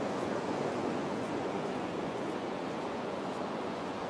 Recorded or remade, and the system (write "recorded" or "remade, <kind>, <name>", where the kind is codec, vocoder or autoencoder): remade, vocoder, Vocos